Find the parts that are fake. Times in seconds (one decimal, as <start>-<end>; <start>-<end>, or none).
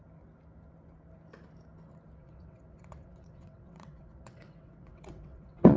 2.2-5.8